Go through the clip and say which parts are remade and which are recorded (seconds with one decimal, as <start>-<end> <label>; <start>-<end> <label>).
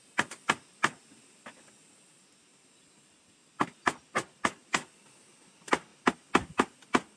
0.0-7.2 recorded